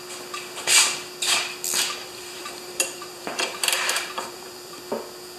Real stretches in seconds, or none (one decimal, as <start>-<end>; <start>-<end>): 0.0-2.0; 4.8-5.4